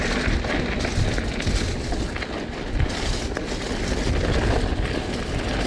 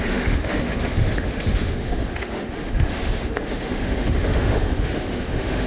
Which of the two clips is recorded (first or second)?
first